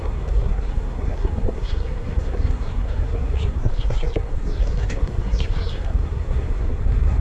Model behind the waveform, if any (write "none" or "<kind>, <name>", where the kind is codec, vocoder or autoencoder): codec, SNAC